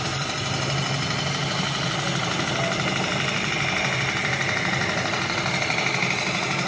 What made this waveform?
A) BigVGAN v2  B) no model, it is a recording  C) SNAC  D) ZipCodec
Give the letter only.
B